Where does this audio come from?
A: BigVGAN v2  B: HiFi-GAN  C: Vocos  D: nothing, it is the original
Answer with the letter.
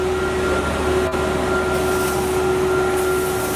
D